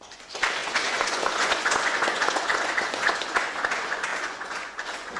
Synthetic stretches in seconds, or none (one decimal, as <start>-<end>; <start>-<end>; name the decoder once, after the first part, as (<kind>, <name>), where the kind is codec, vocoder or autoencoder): 0.0-5.2 (vocoder, Vocos)